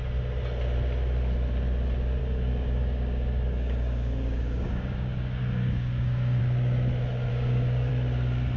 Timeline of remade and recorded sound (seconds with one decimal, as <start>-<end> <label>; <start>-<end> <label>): 0.0-2.2 recorded; 2.2-6.4 remade; 6.4-7.3 recorded; 7.3-7.9 remade; 7.9-8.6 recorded